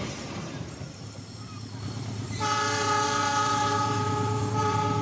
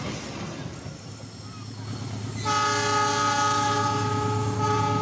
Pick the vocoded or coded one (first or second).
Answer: first